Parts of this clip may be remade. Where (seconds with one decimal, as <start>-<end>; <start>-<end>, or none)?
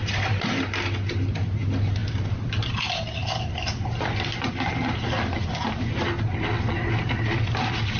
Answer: 0.0-0.6